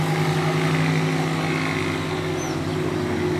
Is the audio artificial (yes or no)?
no